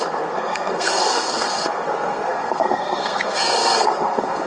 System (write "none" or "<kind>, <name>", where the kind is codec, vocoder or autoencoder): codec, SNAC